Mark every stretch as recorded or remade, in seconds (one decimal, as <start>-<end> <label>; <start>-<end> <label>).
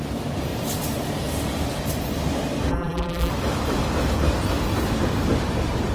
0.0-2.7 recorded; 2.7-3.3 remade; 3.3-5.9 recorded